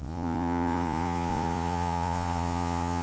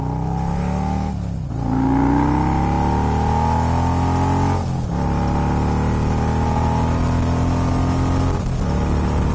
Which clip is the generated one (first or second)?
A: first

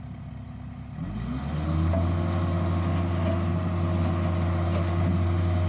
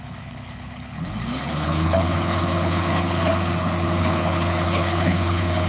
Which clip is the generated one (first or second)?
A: second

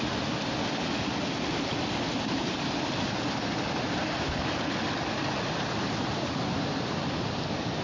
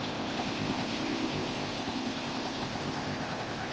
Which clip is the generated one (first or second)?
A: second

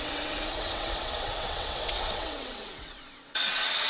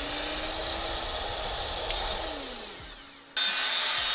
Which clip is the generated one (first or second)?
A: first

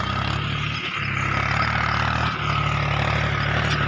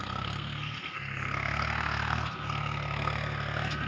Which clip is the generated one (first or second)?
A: second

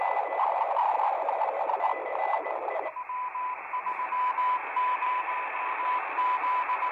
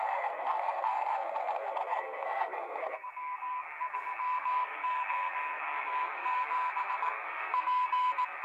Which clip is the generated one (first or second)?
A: second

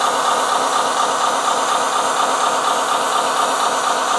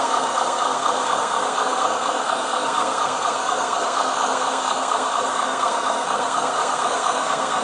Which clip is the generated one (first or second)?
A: second